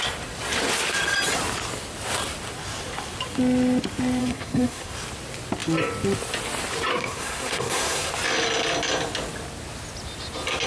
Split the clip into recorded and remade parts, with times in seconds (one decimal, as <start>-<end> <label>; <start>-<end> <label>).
0.0-4.2 recorded; 4.2-4.9 remade; 4.9-6.9 recorded; 6.9-8.1 remade; 8.1-10.7 recorded